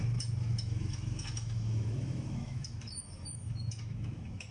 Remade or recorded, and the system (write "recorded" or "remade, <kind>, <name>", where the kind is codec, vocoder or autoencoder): remade, autoencoder, DAC-VAE